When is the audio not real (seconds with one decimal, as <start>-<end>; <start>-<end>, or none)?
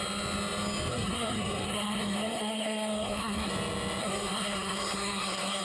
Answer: 0.9-3.5; 4.0-5.6